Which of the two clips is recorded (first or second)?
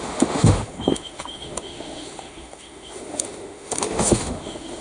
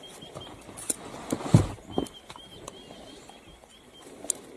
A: second